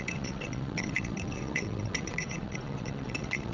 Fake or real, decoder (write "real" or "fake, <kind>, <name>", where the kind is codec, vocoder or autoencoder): fake, vocoder, WaveNeXt